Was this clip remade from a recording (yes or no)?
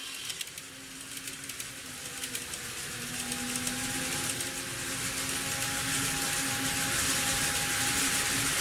no